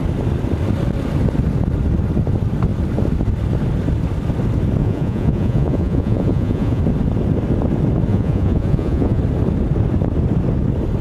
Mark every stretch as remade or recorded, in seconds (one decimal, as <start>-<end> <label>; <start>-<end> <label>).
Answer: 0.0-4.8 recorded; 4.8-6.8 remade; 6.8-8.1 recorded; 8.1-9.2 remade; 9.2-11.0 recorded